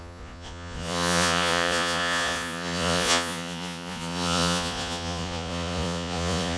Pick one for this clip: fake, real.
fake